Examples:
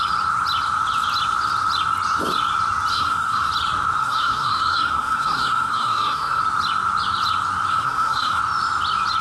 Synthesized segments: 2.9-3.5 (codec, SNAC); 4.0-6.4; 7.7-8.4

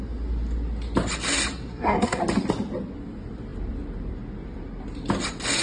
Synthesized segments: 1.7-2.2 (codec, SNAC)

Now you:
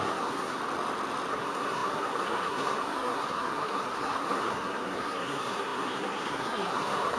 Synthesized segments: 0.0-0.6 (codec, SNAC); 1.3-7.2

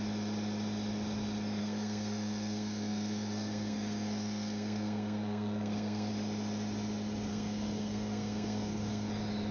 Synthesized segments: 1.6-6.1 (codec, SNAC); 7.3-9.1

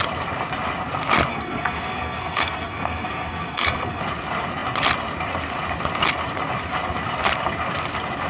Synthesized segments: 1.3-4.0 (codec, SNAC)

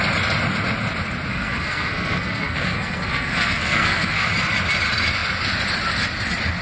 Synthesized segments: 1.3-4.3 (codec, SNAC)